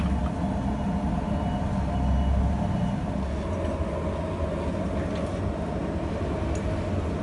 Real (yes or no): yes